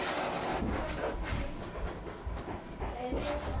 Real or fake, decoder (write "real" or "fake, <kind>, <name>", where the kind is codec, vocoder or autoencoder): real